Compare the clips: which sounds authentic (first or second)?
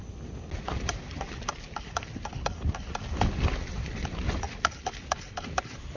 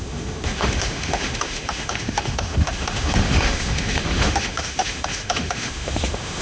first